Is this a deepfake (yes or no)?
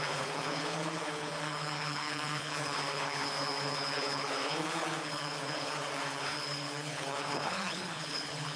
yes